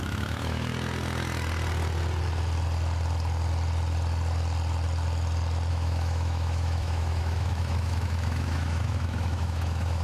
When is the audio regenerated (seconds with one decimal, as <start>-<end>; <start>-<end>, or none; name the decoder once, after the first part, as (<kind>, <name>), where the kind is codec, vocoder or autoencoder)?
0.0-0.7 (autoencoder, DAC-VAE); 5.7-10.0